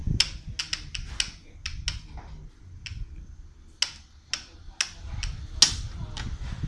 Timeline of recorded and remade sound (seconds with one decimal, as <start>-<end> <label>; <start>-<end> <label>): 0.0-6.7 recorded